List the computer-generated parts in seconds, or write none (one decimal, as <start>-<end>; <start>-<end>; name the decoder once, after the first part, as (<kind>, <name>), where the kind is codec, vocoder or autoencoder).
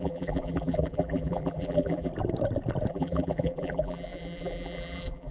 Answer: 0.0-2.1 (vocoder, BigVGAN v2); 2.9-5.3